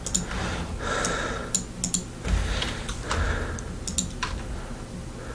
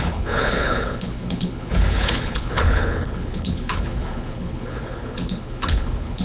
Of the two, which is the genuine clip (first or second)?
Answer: first